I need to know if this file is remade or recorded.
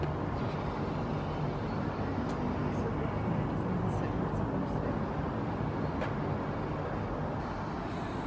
recorded